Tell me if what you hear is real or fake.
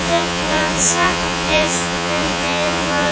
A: fake